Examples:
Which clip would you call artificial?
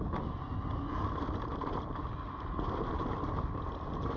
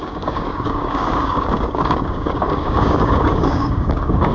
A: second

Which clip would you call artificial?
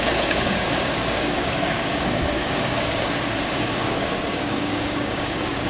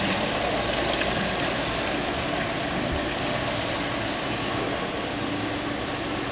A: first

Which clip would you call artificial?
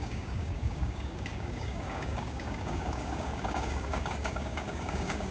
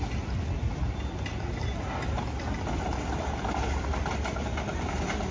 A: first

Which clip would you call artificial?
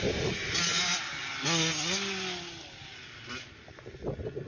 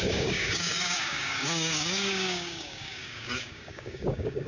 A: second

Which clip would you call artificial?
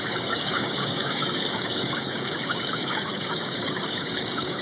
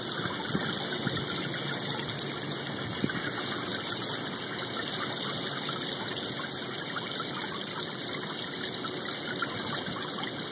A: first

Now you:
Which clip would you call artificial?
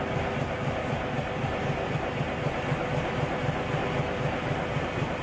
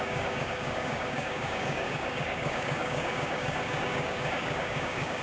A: second